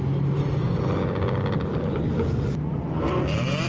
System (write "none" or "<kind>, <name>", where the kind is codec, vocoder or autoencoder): none